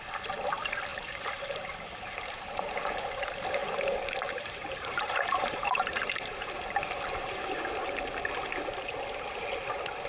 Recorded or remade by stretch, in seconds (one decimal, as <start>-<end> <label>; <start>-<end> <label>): 0.0-0.9 recorded; 0.9-2.1 remade; 2.1-3.6 recorded; 3.6-7.6 remade; 7.6-10.1 recorded